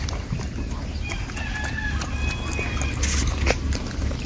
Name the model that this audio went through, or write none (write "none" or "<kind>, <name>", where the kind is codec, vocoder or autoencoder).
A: none